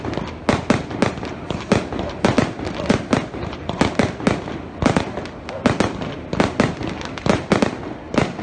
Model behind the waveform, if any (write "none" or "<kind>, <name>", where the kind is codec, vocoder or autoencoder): none